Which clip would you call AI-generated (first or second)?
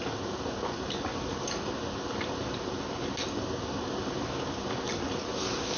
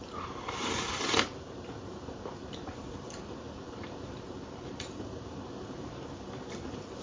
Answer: second